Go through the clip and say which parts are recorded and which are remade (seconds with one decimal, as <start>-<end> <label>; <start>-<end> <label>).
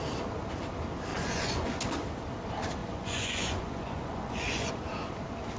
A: 0.0-1.1 recorded; 1.1-1.8 remade; 1.8-2.8 recorded; 2.8-4.7 remade; 4.7-5.6 recorded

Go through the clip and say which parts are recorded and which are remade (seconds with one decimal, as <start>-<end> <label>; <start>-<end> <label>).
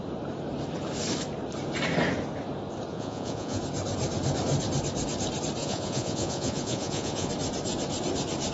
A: 0.0-2.9 recorded; 2.9-3.6 remade; 3.6-5.6 recorded; 5.6-7.3 remade; 7.3-8.5 recorded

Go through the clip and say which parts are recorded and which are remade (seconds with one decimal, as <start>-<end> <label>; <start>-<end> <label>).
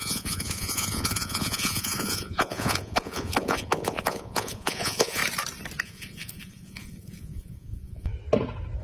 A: 0.0-5.2 remade; 5.2-5.8 recorded; 5.8-8.1 remade; 8.1-8.8 recorded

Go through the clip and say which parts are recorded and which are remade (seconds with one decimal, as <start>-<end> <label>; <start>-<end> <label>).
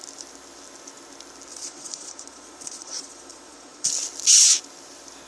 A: 0.0-1.5 recorded; 1.5-3.9 remade; 3.9-5.3 recorded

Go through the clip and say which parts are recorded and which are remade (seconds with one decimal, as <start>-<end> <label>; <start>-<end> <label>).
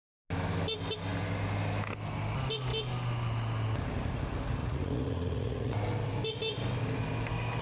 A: 0.0-4.6 recorded; 4.6-5.8 remade; 5.8-7.6 recorded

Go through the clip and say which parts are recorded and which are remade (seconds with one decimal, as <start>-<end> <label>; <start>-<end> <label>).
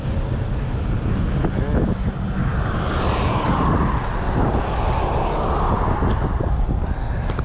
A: 0.0-7.4 recorded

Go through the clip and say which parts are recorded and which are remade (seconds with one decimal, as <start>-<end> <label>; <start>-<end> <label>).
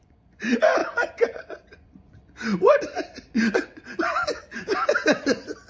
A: 0.0-4.7 remade; 4.7-5.2 recorded; 5.2-5.7 remade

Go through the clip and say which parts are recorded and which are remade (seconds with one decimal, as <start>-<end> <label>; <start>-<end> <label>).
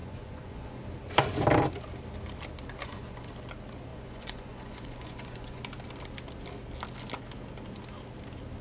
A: 0.0-0.8 remade; 0.8-2.8 recorded; 2.8-3.3 remade; 3.3-3.9 recorded; 3.9-5.6 remade; 5.6-8.6 recorded